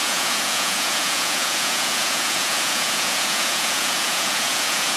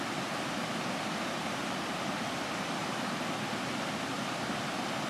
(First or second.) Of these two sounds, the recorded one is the second